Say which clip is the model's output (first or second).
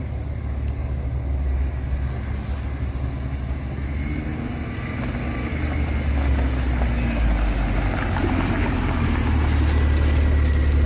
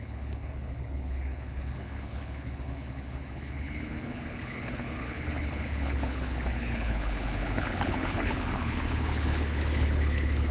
second